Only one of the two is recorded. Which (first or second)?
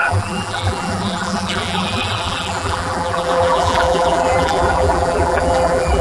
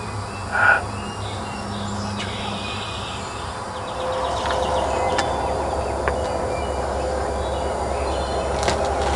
second